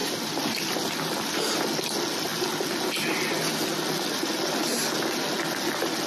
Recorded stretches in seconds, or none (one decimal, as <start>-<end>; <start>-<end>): 1.6-6.1